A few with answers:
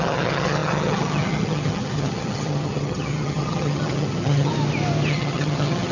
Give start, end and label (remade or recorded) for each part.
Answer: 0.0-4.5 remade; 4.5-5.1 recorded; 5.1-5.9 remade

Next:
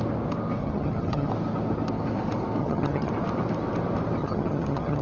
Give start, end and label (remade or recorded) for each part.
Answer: 0.0-0.6 recorded; 0.6-1.3 remade; 1.3-2.6 recorded; 2.6-3.1 remade; 3.1-4.2 recorded; 4.2-5.0 remade

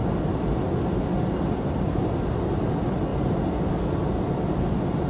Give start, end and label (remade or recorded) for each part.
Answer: 0.0-5.1 recorded